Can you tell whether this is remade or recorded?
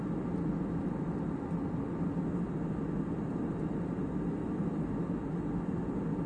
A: recorded